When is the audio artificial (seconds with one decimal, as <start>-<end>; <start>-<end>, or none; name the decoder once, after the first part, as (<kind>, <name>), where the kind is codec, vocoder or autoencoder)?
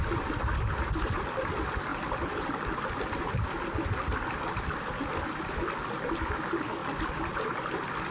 6.8-7.5 (vocoder, BigVGAN v2)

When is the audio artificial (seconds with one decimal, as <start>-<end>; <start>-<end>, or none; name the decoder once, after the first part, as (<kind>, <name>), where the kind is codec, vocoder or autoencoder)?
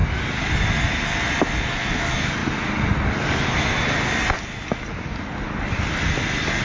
none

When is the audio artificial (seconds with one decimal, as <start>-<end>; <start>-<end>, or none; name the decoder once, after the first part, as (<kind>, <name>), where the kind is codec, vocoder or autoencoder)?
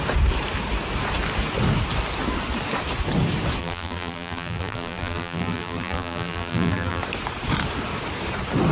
3.6-7.0 (vocoder, BigVGAN v2)